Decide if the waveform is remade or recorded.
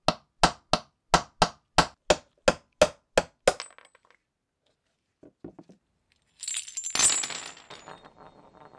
recorded